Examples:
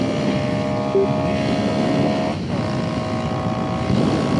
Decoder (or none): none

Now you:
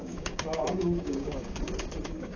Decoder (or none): codec, DAC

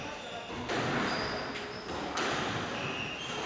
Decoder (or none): none